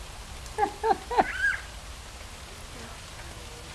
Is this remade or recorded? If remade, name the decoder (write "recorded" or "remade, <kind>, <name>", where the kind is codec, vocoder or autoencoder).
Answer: recorded